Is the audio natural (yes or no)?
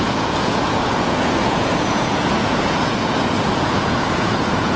no